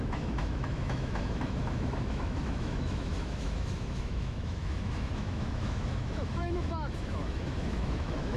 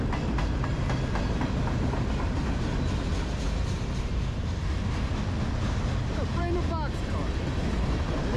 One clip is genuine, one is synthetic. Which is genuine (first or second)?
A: second